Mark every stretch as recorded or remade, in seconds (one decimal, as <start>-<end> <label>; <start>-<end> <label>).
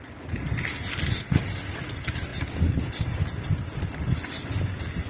0.0-5.1 recorded